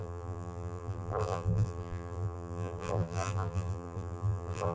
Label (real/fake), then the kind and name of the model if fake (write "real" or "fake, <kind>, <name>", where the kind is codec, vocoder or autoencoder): fake, vocoder, BigVGAN v2